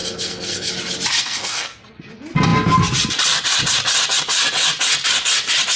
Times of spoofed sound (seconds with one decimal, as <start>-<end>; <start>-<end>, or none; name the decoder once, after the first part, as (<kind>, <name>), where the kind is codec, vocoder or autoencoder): 0.0-0.7 (codec, SNAC); 1.2-1.8